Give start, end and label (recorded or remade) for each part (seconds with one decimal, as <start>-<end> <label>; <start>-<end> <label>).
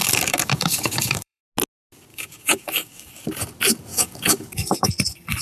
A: 0.0-1.4 remade; 1.4-2.1 recorded; 2.1-3.1 remade; 3.1-3.9 recorded; 3.9-4.9 remade; 4.9-5.4 recorded